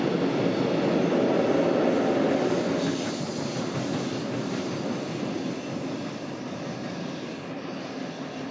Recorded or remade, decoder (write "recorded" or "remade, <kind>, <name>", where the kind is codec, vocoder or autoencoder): recorded